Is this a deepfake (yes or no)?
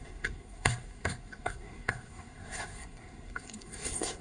yes